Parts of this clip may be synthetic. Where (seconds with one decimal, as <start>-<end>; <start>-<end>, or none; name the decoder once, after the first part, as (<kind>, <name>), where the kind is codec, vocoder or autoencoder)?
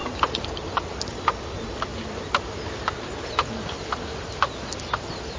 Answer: 0.0-1.1 (vocoder, BigVGAN v2)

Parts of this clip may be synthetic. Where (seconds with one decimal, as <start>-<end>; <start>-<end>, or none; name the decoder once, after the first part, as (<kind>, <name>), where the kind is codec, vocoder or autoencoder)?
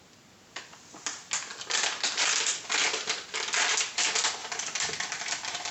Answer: 4.4-5.7 (vocoder, BigVGAN v2)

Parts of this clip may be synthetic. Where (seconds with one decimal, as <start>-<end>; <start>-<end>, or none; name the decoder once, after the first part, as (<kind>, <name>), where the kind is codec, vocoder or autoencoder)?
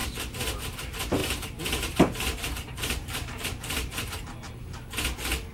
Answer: 1.2-4.5 (vocoder, BigVGAN v2)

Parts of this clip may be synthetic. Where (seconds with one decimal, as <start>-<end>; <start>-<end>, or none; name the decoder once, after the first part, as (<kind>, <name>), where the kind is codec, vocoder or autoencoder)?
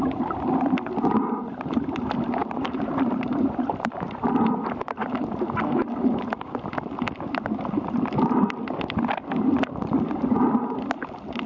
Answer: 2.4-4.0 (vocoder, BigVGAN v2)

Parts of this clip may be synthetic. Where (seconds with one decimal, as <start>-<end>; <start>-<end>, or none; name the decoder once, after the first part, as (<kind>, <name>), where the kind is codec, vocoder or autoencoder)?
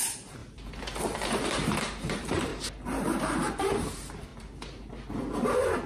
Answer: 0.0-0.4 (vocoder, BigVGAN v2); 1.0-2.5; 3.2-4.3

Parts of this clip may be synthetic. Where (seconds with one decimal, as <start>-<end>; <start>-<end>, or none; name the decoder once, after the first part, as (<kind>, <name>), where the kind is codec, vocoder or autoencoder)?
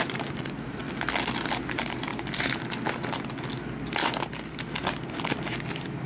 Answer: 0.0-0.8 (vocoder, BigVGAN v2); 1.7-2.1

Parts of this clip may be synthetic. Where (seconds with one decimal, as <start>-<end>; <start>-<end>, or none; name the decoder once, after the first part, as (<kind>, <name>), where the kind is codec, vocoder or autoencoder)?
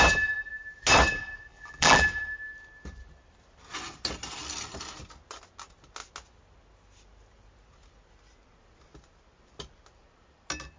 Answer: 1.5-2.0 (vocoder, BigVGAN v2)